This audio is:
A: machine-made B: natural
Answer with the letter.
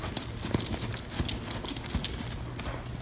B